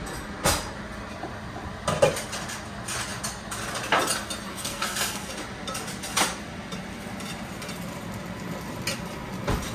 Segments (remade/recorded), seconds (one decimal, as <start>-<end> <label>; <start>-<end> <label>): 0.0-4.5 recorded; 4.5-5.3 remade; 5.3-9.7 recorded